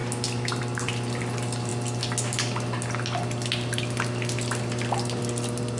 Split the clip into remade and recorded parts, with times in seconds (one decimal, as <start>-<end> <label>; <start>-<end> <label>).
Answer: 0.0-1.7 remade; 1.7-5.2 recorded; 5.2-5.8 remade